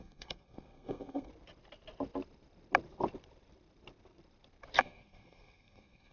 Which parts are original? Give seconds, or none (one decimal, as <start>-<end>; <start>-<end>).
1.3-4.8